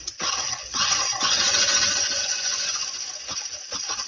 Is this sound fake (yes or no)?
yes